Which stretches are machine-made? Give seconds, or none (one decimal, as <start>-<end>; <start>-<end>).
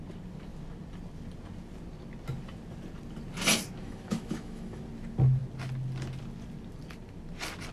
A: 3.8-4.8